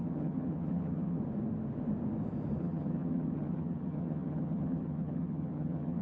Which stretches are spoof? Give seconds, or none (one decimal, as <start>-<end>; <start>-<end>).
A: 0.0-1.2; 2.6-6.0